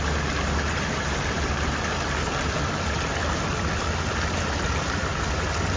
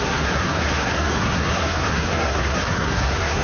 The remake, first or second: second